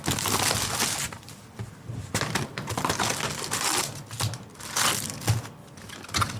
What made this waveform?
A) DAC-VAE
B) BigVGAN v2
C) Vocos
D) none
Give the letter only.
D